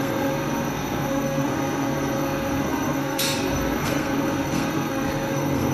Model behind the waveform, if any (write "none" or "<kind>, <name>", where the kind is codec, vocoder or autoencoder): codec, SNAC